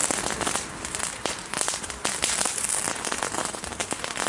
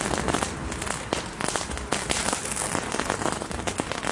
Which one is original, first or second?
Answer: second